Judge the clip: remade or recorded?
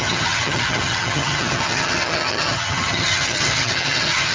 remade